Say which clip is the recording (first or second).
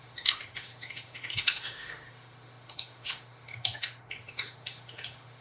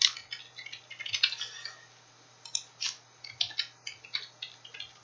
second